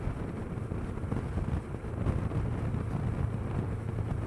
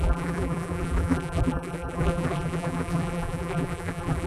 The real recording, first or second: first